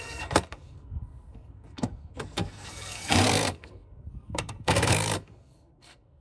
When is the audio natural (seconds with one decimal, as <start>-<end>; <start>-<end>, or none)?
none